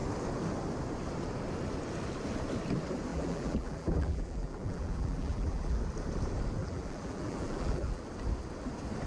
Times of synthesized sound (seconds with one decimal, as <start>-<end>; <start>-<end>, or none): 3.1-5.8; 6.6-8.0